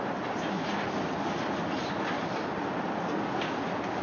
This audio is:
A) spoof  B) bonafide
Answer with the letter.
B